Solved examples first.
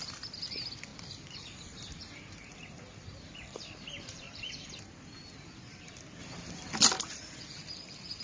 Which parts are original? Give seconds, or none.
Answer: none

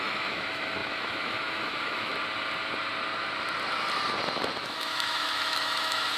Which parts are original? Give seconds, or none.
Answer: 2.1-4.6